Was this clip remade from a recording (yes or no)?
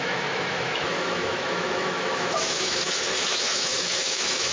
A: yes